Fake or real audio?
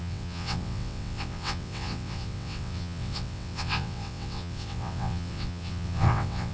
fake